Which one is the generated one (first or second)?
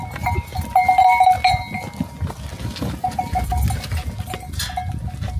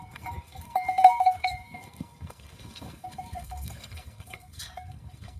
second